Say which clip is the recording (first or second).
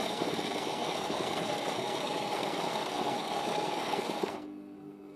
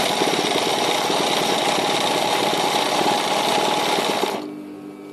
second